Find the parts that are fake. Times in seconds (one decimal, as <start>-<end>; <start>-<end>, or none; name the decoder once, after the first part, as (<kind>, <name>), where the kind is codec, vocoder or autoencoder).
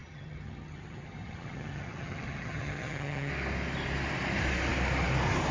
0.0-3.3 (vocoder, HiFi-GAN)